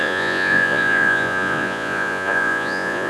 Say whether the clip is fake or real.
fake